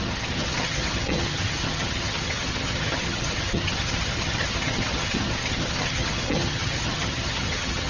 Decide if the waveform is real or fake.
fake